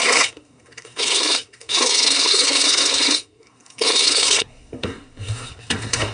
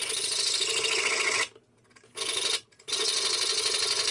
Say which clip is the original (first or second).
second